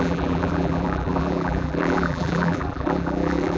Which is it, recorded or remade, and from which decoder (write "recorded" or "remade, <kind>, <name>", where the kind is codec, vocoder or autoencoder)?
remade, vocoder, BigVGAN v2